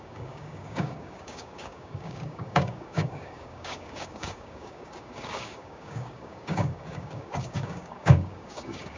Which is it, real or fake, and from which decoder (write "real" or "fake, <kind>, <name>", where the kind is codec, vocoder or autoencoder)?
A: fake, codec, DAC